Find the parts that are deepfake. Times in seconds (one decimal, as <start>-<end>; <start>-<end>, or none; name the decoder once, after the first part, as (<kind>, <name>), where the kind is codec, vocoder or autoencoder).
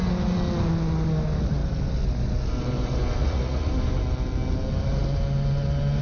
3.2-3.7 (vocoder, Vocos)